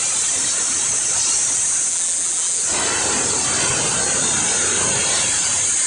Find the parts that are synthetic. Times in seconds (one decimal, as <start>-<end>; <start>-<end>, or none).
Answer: 1.9-2.6